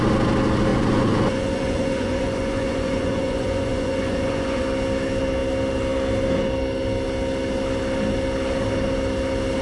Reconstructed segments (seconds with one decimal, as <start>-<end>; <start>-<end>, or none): 0.7-4.6